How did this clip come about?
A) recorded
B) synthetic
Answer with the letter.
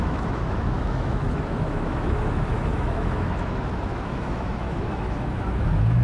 B